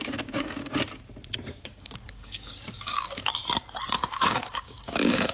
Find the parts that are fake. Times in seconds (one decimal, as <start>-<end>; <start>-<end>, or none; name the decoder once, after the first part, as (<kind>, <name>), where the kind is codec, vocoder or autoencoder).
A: 0.0-0.8 (codec, DAC); 1.4-3.4; 4.1-5.3